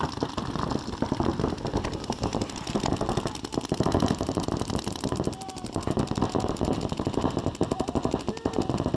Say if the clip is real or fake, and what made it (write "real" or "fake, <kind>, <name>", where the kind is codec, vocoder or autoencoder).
real